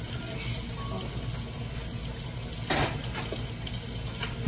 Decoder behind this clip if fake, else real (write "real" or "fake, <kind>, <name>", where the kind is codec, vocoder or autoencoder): real